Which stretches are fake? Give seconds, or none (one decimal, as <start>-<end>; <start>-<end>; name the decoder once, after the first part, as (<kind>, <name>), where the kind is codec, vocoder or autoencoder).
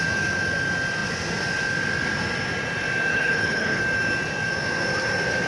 3.1-3.8 (codec, HILCodec)